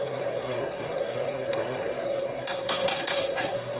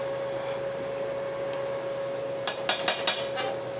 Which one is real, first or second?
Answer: second